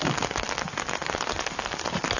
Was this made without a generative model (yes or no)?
yes